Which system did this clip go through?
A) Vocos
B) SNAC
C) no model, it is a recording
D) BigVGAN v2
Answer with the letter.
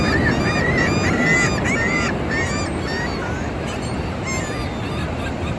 C